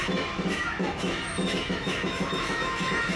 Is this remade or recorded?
remade